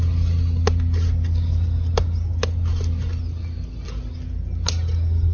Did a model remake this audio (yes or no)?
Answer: no